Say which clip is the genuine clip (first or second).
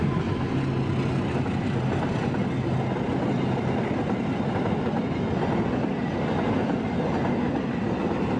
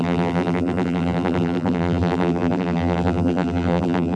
first